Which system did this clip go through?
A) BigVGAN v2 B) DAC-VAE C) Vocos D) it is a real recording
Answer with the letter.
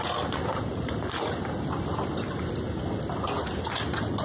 D